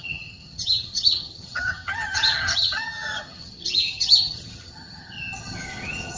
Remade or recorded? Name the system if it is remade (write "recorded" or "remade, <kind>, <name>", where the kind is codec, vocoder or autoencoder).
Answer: remade, vocoder, HiFi-GAN